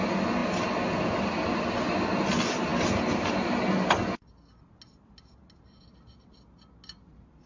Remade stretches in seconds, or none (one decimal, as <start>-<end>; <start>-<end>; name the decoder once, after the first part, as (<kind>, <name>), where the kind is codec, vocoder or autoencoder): none